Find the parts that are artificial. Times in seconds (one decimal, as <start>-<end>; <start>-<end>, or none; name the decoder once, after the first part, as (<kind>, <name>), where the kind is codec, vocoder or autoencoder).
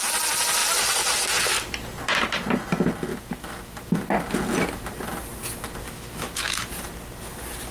3.1-4.0 (autoencoder, DAC-VAE); 5.8-6.7